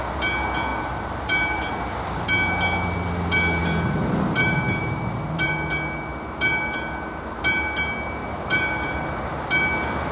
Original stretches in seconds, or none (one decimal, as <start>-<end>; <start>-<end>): 0.0-0.7; 1.7-3.6; 5.5-8.2; 9.3-10.1